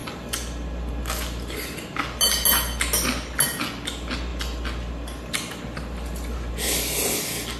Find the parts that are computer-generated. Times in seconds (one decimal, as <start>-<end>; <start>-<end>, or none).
none